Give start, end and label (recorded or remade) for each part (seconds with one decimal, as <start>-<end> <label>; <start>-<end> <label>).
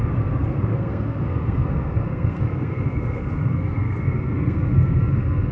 0.0-5.5 remade